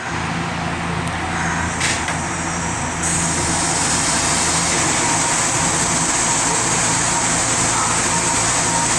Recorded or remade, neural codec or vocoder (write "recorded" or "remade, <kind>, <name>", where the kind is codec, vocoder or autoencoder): recorded